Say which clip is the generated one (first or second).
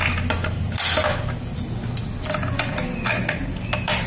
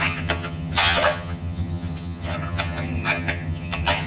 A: second